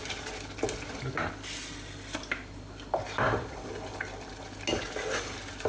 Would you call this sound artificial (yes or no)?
no